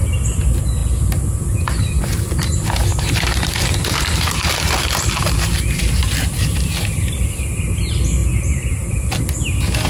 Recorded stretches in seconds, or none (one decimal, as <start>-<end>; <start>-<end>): 0.0-2.9; 6.0-8.2; 8.9-9.9